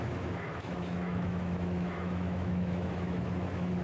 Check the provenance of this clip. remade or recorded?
remade